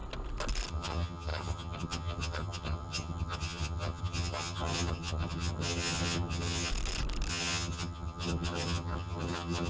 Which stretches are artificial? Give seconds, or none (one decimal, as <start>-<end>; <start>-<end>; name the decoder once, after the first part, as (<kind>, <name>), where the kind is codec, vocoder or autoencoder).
0.7-6.7 (vocoder, HiFi-GAN); 7.3-9.7